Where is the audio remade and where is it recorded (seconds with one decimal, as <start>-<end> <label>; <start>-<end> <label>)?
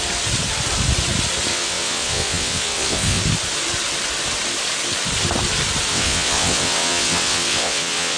0.0-1.5 recorded; 1.5-3.2 remade; 3.2-5.9 recorded; 5.9-8.2 remade